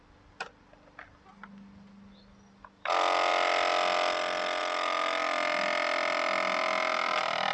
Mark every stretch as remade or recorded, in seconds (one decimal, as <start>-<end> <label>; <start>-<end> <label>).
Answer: 0.0-7.5 recorded